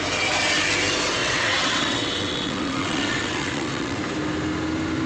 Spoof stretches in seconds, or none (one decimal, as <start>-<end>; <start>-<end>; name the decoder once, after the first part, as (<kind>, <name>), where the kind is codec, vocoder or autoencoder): 1.2-4.0 (vocoder, WaveNeXt)